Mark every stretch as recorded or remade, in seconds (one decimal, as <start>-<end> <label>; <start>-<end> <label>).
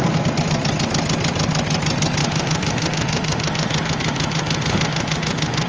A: 0.0-2.2 recorded; 2.2-5.7 remade